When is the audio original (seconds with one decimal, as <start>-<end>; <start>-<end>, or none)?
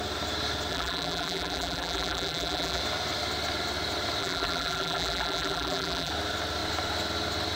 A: 0.0-0.7; 2.8-4.2; 6.1-7.6